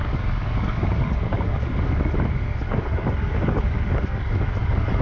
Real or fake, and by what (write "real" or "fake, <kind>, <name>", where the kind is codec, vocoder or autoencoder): fake, codec, DAC